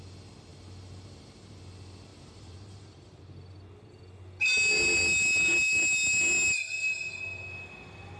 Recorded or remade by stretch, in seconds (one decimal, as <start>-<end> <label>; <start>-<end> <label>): 0.0-0.5 recorded; 0.5-1.6 remade; 1.6-2.1 recorded; 2.1-3.2 remade; 3.2-8.2 recorded